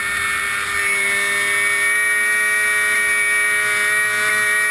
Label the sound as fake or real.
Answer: real